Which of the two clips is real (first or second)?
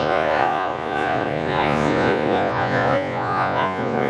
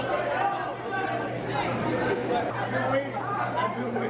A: second